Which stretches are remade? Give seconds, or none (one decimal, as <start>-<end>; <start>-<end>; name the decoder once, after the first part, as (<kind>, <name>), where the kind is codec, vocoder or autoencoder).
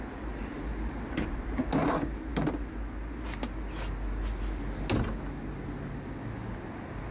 none